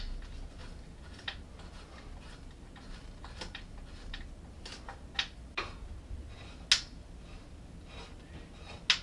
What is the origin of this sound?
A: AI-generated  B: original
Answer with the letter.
B